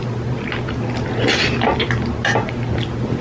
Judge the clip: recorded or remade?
recorded